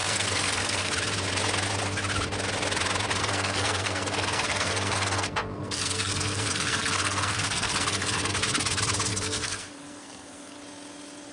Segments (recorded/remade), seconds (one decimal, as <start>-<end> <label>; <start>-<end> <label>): 0.0-0.9 remade; 0.9-3.2 recorded; 3.2-8.4 remade; 8.4-9.1 recorded; 9.1-10.6 remade; 10.6-11.3 recorded